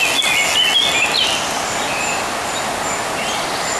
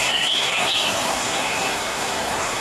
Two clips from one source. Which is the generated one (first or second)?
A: second